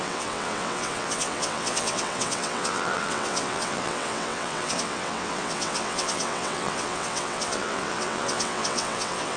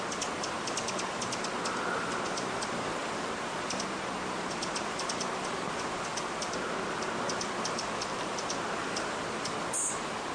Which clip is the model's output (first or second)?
first